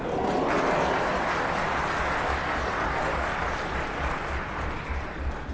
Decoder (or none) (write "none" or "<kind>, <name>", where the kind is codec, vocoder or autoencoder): none